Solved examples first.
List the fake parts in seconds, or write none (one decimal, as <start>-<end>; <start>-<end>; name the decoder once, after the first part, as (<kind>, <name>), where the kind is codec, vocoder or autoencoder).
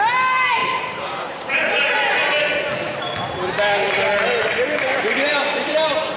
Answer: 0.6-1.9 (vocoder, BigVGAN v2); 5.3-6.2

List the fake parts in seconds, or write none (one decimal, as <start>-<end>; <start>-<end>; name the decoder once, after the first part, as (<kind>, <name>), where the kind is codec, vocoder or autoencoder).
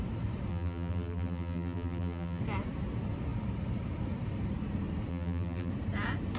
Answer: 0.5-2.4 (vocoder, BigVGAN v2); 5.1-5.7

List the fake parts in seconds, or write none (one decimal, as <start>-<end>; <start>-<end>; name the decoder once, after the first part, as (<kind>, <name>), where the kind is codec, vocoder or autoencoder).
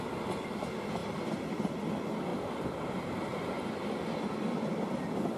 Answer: 1.0-1.9 (vocoder, BigVGAN v2); 2.3-2.9; 3.3-3.9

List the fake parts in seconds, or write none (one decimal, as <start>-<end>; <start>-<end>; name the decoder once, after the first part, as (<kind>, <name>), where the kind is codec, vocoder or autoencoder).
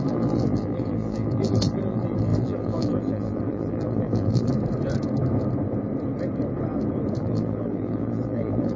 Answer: 0.0-4.5 (vocoder, BigVGAN v2); 7.2-8.8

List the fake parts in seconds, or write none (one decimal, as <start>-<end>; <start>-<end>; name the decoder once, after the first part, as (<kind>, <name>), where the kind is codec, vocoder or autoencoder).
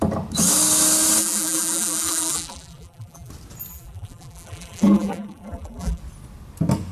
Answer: 1.2-3.3 (vocoder, BigVGAN v2); 3.7-6.0